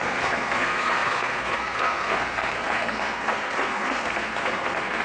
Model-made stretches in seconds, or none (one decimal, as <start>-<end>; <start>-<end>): 0.0-5.0